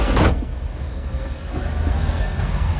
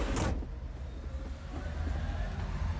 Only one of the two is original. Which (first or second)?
second